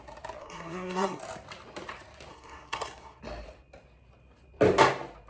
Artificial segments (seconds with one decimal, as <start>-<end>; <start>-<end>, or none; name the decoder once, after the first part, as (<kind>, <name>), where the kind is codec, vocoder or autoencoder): 0.4-1.2 (codec, SNAC); 2.3-3.2